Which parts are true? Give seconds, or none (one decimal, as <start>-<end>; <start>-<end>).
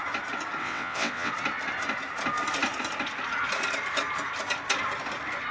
0.0-0.6; 1.3-5.5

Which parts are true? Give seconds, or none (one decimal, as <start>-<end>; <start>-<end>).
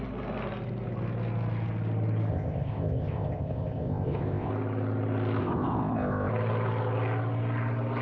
0.0-2.3; 4.5-5.4; 6.3-8.0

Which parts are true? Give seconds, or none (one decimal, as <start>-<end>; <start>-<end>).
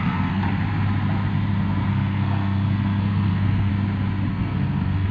0.4-1.9; 3.7-4.3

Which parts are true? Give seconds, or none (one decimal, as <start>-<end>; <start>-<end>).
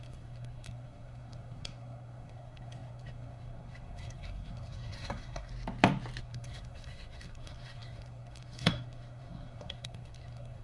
5.5-6.2